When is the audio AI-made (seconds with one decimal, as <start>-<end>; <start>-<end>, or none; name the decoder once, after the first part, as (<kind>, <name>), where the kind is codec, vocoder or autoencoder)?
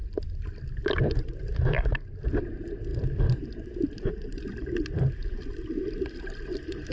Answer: 2.9-6.2 (vocoder, BigVGAN v2)